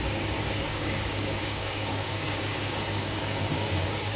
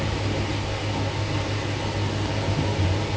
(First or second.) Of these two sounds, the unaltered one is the second